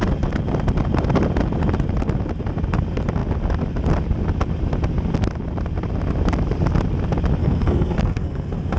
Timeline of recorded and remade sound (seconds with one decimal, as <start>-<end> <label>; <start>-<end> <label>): 0.0-7.4 recorded; 7.4-8.8 remade

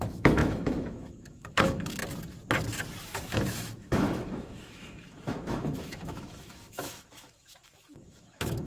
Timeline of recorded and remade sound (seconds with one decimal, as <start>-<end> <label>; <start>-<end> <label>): 0.0-2.0 remade; 2.0-3.0 recorded; 3.0-8.7 remade

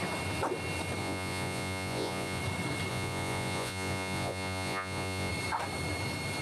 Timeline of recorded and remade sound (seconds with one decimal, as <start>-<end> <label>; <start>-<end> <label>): 0.0-1.0 recorded; 1.0-2.4 remade; 2.4-2.9 recorded; 2.9-5.3 remade; 5.3-6.4 recorded

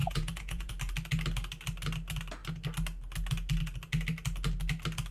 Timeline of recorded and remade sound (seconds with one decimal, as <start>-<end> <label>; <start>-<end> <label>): 0.0-0.7 remade; 0.7-5.1 recorded

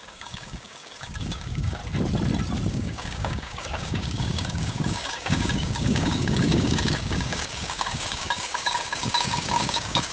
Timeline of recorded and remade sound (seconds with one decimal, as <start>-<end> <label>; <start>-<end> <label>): 0.0-1.8 remade; 1.8-2.7 recorded; 2.7-10.1 remade